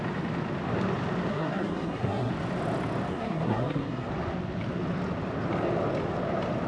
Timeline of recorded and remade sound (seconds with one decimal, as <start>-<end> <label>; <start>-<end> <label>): 0.0-1.3 recorded; 1.3-2.3 remade; 2.3-3.1 recorded; 3.1-4.1 remade; 4.1-6.7 recorded